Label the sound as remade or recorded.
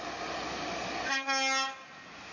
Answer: recorded